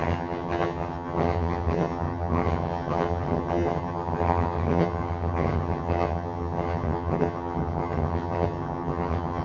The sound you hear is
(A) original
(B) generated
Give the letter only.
B